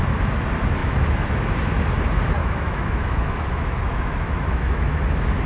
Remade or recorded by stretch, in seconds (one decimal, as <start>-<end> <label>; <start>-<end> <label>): 0.0-0.8 recorded; 0.8-1.5 remade; 1.5-2.4 recorded; 2.4-5.0 remade; 5.0-5.5 recorded